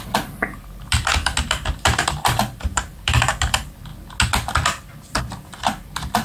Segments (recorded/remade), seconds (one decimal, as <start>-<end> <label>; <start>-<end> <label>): 0.0-1.1 remade; 1.1-2.3 recorded; 2.3-3.9 remade; 3.9-5.2 recorded; 5.2-6.2 remade

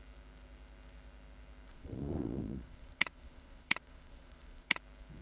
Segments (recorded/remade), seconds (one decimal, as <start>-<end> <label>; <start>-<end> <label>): 0.0-1.7 recorded; 1.7-4.8 remade; 4.8-5.2 recorded

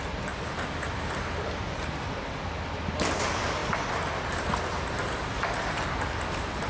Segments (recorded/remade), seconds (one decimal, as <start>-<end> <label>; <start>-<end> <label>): 0.0-6.7 recorded

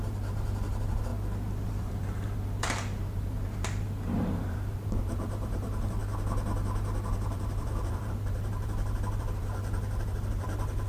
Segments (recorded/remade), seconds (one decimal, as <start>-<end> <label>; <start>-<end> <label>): 0.0-1.1 remade; 1.1-1.7 recorded; 1.7-6.0 remade; 6.0-7.1 recorded; 7.1-10.9 remade

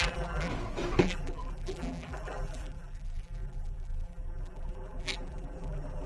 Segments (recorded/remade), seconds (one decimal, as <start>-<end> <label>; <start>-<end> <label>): 0.0-0.5 remade; 0.5-1.0 recorded; 1.0-6.1 remade